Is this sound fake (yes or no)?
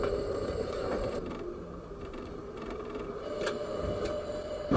yes